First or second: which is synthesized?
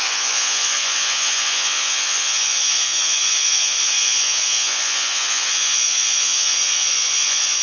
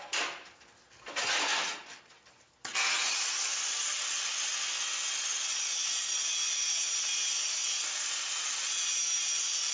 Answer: first